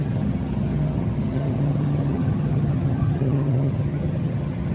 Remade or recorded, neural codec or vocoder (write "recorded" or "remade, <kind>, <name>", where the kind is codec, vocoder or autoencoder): remade, vocoder, HiFi-GAN